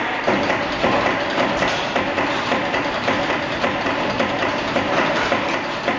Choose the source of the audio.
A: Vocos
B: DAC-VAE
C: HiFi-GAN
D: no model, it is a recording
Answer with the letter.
D